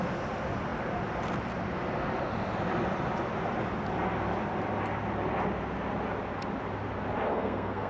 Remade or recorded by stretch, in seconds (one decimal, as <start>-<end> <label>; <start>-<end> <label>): 0.0-7.3 recorded; 7.3-7.9 remade